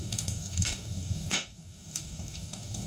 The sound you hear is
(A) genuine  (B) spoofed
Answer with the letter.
B